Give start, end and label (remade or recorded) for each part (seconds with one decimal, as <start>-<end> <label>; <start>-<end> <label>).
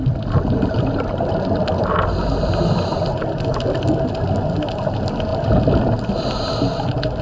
0.0-7.2 recorded